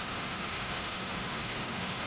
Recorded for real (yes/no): no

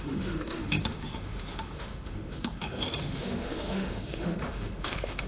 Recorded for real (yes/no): no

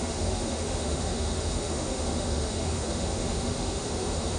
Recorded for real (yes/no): no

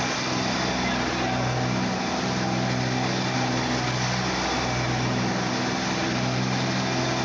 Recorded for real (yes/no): yes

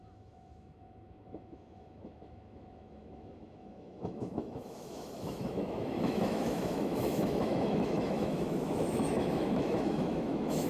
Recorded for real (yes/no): no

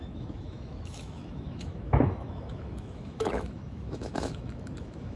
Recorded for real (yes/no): no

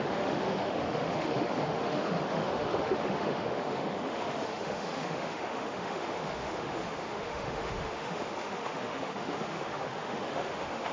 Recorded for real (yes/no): no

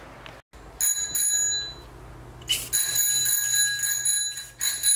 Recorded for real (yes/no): yes